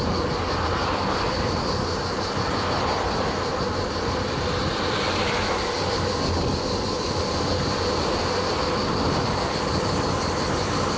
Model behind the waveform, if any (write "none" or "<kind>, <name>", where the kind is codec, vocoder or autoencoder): none